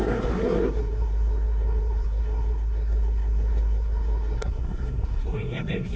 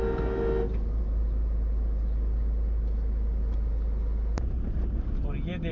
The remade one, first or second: first